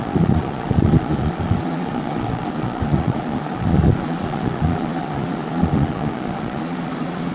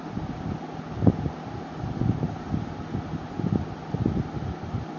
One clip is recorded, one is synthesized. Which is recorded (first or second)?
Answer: second